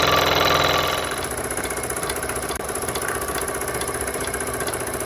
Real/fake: real